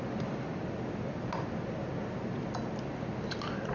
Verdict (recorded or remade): recorded